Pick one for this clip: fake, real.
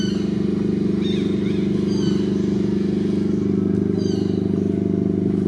real